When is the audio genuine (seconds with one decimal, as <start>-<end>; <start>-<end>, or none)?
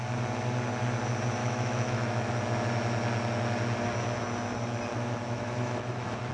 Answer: 0.0-1.4; 2.3-4.9